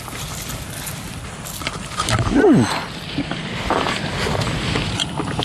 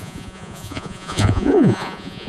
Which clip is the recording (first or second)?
first